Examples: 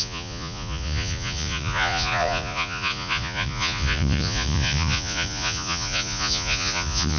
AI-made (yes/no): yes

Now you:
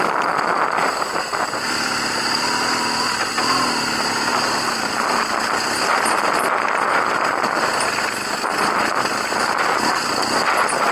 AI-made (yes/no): no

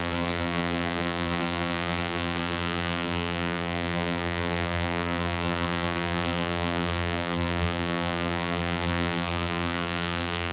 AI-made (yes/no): yes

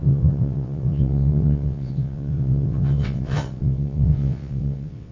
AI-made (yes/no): yes